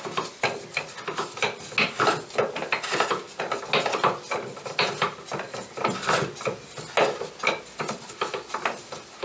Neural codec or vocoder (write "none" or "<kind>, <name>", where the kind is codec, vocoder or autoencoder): none